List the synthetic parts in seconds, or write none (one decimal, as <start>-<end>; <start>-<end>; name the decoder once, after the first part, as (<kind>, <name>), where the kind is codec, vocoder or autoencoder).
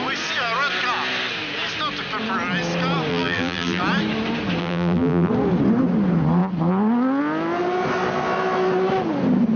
3.1-3.8 (vocoder, BigVGAN v2); 4.6-5.3